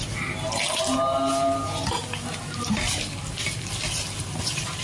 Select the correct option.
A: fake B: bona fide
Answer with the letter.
B